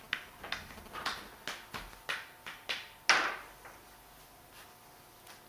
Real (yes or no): yes